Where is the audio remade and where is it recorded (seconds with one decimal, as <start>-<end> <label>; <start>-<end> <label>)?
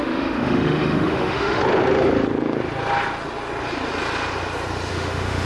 0.0-1.6 remade; 1.6-4.9 recorded; 4.9-5.5 remade